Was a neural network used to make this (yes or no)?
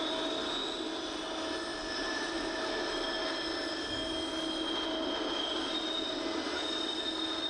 no